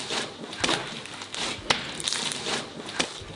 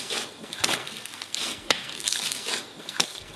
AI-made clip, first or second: second